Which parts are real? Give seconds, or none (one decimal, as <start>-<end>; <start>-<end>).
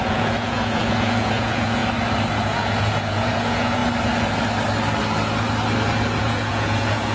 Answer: 1.8-2.4; 3.8-6.2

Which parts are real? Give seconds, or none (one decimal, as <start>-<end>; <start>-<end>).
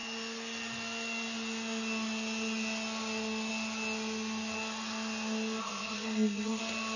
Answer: 0.0-5.6; 6.6-7.0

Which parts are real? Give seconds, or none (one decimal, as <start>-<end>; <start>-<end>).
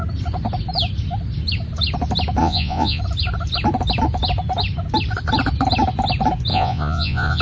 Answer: 0.0-2.4; 3.0-6.5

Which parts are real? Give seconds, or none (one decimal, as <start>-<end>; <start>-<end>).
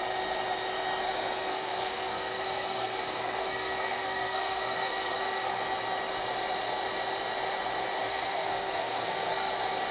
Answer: 0.0-1.5; 5.6-8.1; 9.5-9.9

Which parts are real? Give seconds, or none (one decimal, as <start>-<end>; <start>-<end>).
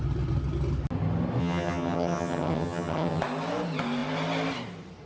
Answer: 0.0-1.4; 3.2-5.1